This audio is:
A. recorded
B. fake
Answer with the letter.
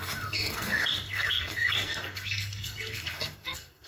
B